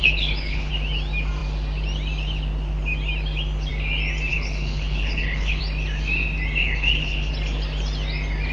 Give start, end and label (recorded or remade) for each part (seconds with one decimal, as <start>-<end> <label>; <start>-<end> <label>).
0.0-0.7 remade; 0.7-4.3 recorded; 4.3-5.6 remade; 5.6-6.6 recorded; 6.6-7.3 remade; 7.3-8.5 recorded